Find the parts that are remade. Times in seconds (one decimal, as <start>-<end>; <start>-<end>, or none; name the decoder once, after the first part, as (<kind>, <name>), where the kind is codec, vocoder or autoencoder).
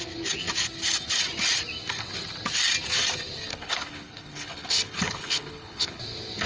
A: 3.5-6.0 (codec, HILCodec)